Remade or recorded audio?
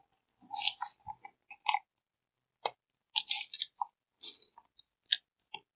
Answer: recorded